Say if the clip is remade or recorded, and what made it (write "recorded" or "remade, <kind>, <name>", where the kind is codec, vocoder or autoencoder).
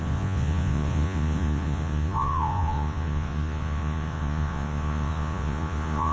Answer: remade, vocoder, Vocos